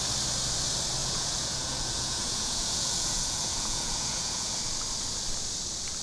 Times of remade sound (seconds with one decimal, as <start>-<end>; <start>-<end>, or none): 1.0-4.6